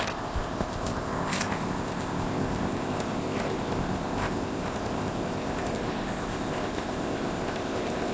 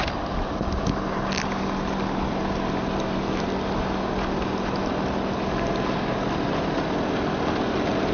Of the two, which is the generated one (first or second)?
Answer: first